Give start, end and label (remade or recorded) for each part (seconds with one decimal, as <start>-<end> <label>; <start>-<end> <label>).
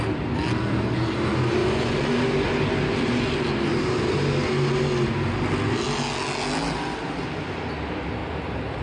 0.0-1.6 recorded; 1.6-2.2 remade; 2.2-8.8 recorded